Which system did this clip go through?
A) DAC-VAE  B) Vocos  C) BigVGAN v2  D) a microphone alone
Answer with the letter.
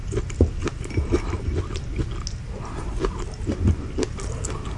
D